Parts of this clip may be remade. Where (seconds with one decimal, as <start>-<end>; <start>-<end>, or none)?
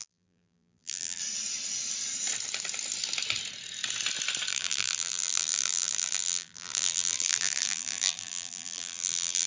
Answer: 0.0-1.2; 4.5-9.5